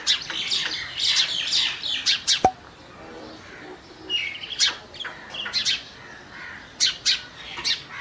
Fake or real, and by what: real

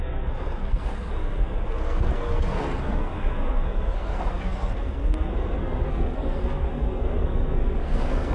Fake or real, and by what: fake, codec, SNAC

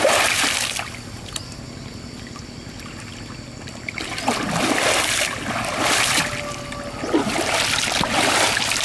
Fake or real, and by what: real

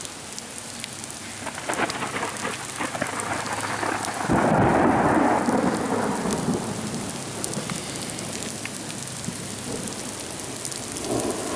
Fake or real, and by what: real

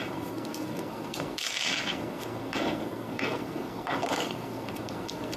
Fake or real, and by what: fake, codec, SNAC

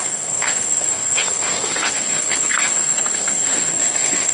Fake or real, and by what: fake, codec, SNAC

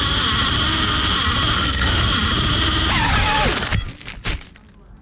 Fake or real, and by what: real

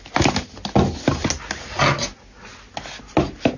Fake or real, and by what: real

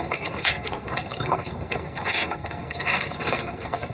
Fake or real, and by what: fake, codec, SNAC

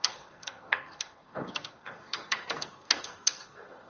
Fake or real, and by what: fake, codec, SNAC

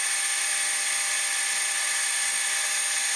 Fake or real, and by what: real